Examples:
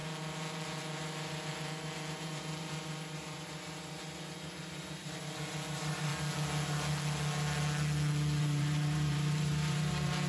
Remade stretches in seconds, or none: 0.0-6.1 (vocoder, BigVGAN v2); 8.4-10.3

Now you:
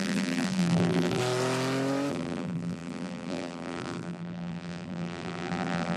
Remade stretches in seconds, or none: 0.0-1.2 (vocoder, BigVGAN v2); 2.1-6.0

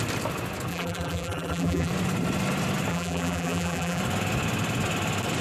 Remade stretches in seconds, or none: 0.7-1.9 (vocoder, BigVGAN v2); 2.9-4.0

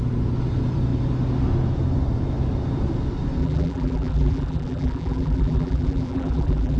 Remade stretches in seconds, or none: 3.4-6.8 (vocoder, BigVGAN v2)

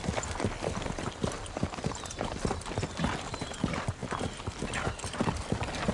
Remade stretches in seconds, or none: none

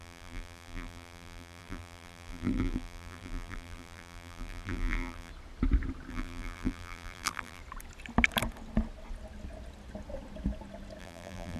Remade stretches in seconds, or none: 0.0-5.3 (vocoder, BigVGAN v2); 6.1-7.6; 11.0-11.6

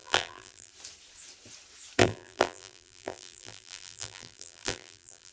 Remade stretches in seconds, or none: 0.0-0.7 (vocoder, BigVGAN v2); 2.0-5.3